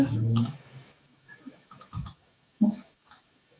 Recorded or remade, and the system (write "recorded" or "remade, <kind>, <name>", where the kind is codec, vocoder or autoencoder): remade, autoencoder, DAC-VAE